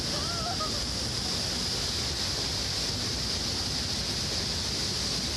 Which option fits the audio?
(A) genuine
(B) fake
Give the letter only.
A